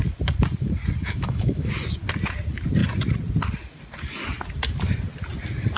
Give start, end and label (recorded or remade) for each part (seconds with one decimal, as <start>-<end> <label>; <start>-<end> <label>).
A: 0.0-1.0 recorded; 1.0-1.7 remade; 1.7-5.8 recorded